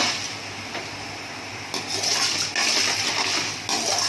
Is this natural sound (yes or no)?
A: yes